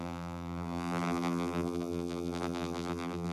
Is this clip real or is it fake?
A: fake